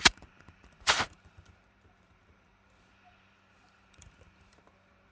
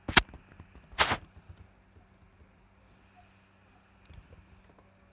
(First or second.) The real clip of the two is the second